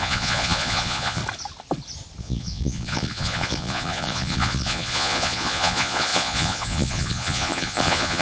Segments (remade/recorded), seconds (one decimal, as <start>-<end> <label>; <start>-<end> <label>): 0.0-1.2 remade; 1.2-2.2 recorded; 2.2-8.2 remade